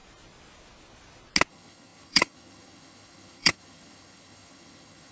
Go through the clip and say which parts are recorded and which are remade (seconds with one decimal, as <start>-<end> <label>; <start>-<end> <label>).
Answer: 0.0-1.5 recorded; 1.5-5.1 remade